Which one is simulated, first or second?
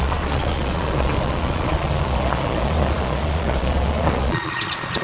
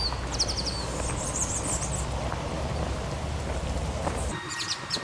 first